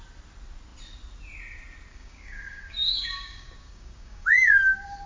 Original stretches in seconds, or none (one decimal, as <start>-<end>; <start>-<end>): 0.0-1.9